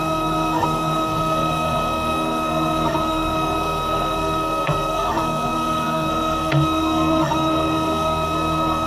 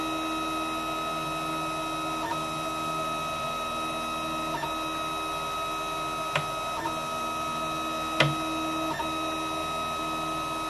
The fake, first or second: first